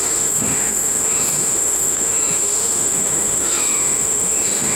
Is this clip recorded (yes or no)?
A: no